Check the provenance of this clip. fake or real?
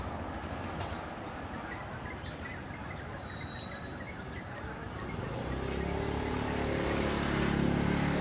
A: real